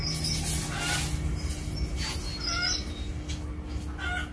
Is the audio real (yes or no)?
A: yes